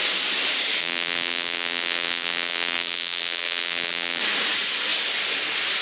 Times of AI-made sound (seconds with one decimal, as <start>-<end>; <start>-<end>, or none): 0.8-4.2